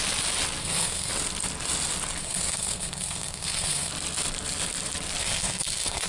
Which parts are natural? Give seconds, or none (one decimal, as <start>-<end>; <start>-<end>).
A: 0.0-0.6; 1.1-2.2; 3.9-5.2